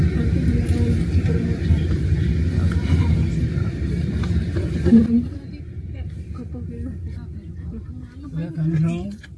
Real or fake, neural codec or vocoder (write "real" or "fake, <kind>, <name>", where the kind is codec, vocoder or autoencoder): real